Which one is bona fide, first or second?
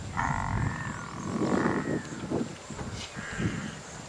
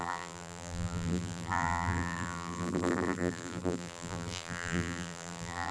first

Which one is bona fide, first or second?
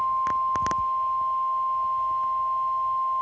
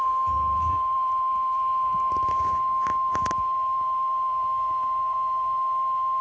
first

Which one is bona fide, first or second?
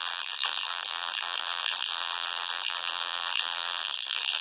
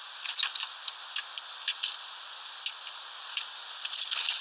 second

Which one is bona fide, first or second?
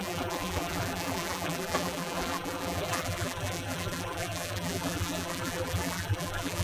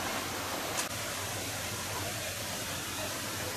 second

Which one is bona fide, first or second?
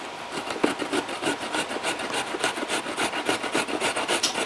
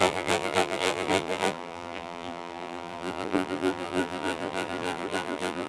first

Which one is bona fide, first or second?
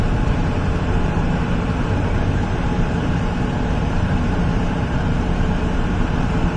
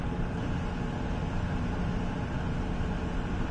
second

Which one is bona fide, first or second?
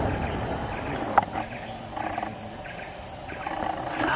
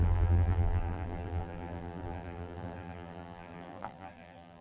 first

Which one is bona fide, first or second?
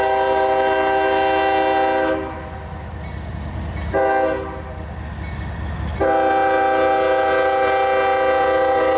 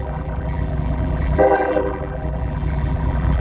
first